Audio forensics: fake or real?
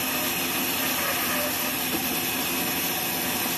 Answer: real